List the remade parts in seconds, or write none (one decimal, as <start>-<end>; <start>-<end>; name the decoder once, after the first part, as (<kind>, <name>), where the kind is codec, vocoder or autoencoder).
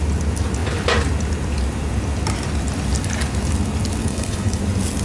4.0-4.6 (codec, HILCodec)